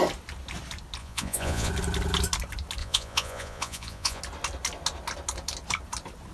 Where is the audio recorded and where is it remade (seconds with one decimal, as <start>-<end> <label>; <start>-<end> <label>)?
0.0-1.0 recorded; 1.0-1.7 remade; 1.7-2.8 recorded; 2.8-4.2 remade; 4.2-6.3 recorded